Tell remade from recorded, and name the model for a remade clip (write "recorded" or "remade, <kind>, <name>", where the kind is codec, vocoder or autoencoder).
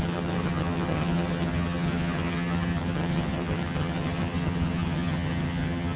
remade, vocoder, HiFi-GAN